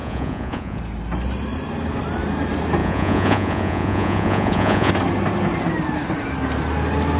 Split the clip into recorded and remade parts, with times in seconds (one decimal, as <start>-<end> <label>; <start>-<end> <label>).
0.0-0.8 remade; 0.8-2.8 recorded; 2.8-4.9 remade; 4.9-7.2 recorded